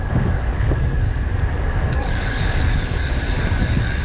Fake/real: fake